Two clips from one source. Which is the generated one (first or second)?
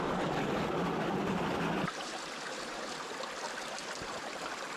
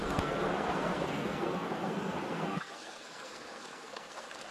second